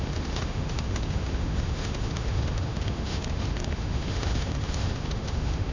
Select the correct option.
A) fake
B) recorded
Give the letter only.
A